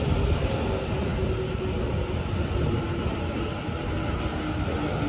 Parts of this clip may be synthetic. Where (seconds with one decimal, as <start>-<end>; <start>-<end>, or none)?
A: none